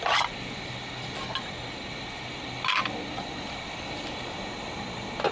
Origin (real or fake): real